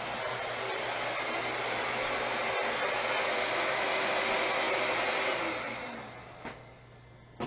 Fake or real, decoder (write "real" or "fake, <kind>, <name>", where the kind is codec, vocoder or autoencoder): real